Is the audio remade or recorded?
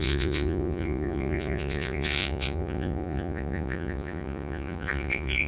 remade